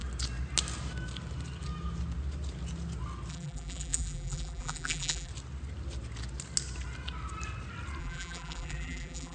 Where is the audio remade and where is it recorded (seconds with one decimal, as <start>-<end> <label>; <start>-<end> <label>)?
0.0-3.3 recorded; 3.3-5.3 remade; 5.3-8.0 recorded; 8.0-9.3 remade

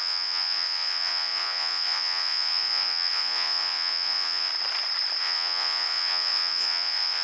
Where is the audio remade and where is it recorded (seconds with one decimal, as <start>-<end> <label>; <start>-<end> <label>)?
0.0-4.5 remade; 4.5-5.2 recorded; 5.2-7.2 remade